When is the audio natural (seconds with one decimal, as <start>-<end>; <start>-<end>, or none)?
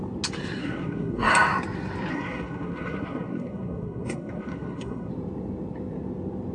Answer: 0.0-0.6; 1.3-2.1; 5.1-6.5